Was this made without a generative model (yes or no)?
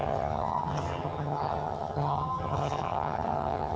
no